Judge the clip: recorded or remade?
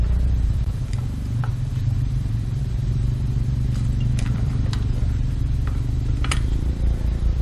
remade